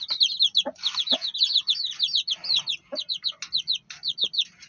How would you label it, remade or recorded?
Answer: recorded